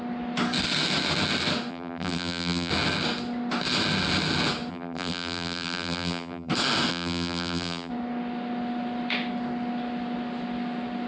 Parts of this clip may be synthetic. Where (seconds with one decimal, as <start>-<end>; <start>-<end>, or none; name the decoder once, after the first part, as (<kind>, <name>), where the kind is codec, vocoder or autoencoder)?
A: 1.7-2.7 (vocoder, BigVGAN v2); 4.7-6.5; 6.9-7.9